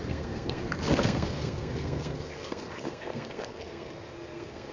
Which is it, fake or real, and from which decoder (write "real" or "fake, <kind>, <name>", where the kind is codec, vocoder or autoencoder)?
fake, codec, SNAC